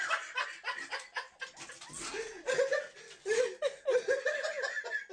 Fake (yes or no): no